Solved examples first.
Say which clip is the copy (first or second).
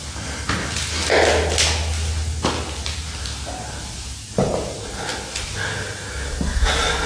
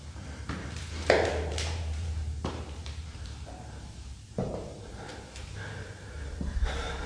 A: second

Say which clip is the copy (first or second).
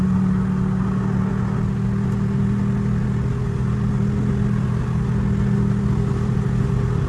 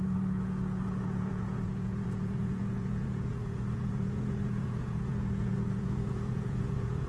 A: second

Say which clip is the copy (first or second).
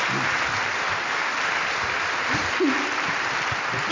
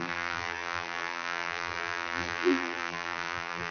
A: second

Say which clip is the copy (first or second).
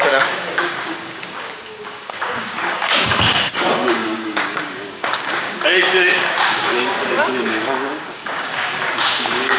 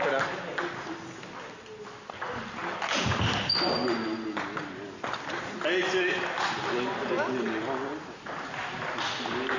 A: first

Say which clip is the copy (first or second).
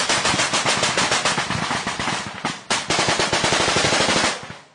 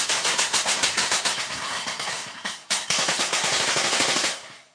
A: second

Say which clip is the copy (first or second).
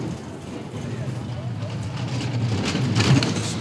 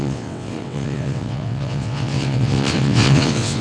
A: second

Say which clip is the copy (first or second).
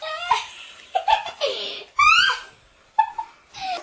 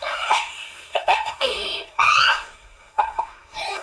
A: second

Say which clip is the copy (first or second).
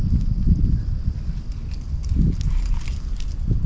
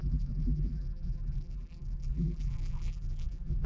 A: second